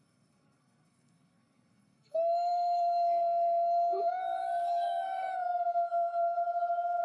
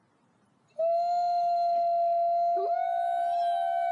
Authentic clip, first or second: second